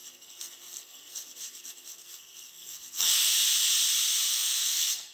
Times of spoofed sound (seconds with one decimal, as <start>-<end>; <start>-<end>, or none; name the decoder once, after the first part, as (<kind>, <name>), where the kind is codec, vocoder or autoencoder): 0.0-3.3 (codec, SNAC); 4.3-5.1